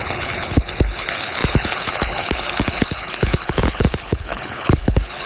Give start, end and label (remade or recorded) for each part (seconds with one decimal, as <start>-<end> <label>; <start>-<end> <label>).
0.0-5.3 remade